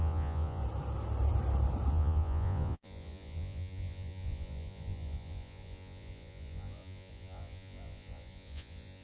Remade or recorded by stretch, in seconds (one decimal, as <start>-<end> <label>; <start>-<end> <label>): 0.0-0.6 remade; 0.6-1.9 recorded; 1.9-9.0 remade